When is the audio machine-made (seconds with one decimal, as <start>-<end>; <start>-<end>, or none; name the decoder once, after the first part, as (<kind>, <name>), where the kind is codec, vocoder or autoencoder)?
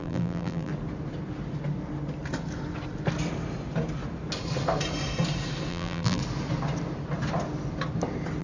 0.0-0.7 (vocoder, BigVGAN v2); 5.7-6.2